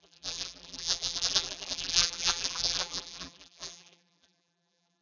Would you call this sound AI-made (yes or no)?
yes